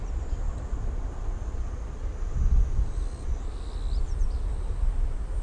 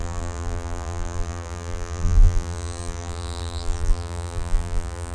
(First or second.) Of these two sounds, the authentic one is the first